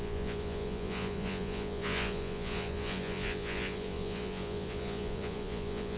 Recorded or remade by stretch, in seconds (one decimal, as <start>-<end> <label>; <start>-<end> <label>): 0.0-6.0 remade